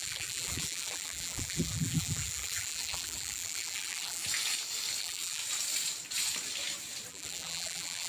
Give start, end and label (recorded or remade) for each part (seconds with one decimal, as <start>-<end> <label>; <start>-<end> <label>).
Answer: 0.0-4.2 remade; 4.2-5.0 recorded; 5.0-5.4 remade; 5.4-7.1 recorded; 7.1-8.1 remade